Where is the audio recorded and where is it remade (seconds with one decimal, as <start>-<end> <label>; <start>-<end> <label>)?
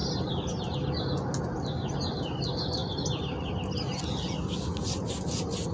0.0-5.7 recorded